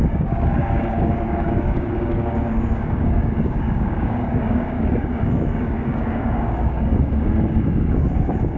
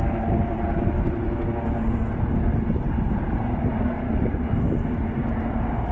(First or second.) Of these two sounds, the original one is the second